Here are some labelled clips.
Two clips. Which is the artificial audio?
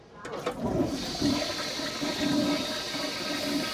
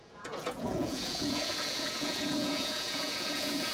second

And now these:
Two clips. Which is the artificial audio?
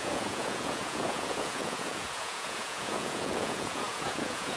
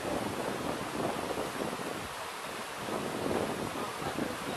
first